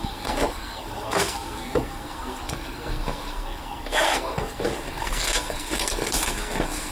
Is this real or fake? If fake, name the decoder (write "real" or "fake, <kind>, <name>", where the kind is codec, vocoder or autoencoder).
fake, codec, SNAC